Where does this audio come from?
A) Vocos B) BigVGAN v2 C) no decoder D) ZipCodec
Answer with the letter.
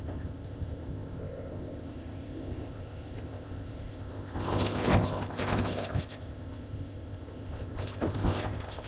D